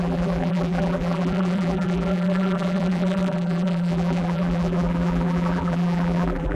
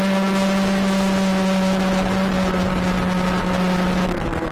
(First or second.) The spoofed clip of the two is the first